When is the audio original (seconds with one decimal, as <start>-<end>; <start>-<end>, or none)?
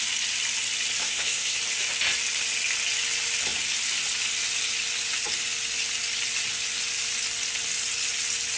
0.0-1.0; 1.6-8.6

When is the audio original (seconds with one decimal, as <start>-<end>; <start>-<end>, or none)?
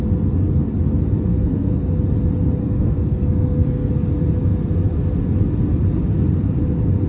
0.0-1.3; 1.8-2.6; 3.9-7.1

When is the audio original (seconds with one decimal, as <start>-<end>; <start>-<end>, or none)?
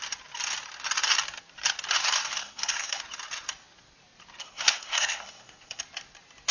0.0-2.4; 3.0-4.4; 5.8-6.5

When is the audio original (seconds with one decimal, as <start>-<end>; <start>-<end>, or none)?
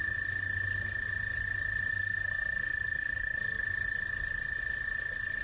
0.0-1.9; 3.6-5.4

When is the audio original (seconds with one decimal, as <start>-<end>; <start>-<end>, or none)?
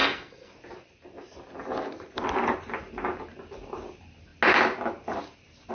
0.5-5.7